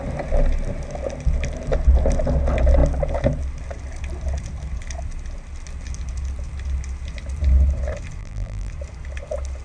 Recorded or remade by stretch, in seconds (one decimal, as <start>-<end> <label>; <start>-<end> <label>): 0.0-8.2 recorded; 8.2-8.7 remade; 8.7-9.6 recorded